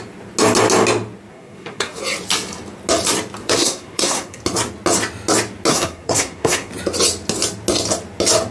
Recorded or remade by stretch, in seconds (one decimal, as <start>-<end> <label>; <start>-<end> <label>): 0.0-1.3 recorded; 1.3-2.0 remade; 2.0-3.4 recorded; 3.4-4.4 remade; 4.4-5.7 recorded; 5.7-6.7 remade; 6.7-8.5 recorded